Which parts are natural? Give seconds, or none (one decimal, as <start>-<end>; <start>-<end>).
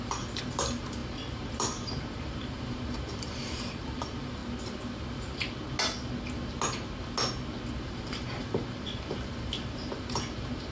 4.4-7.8